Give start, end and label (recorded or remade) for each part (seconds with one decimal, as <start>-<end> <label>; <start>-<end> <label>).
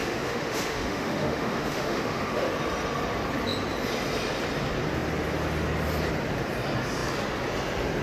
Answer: 0.0-2.5 remade; 2.5-8.0 recorded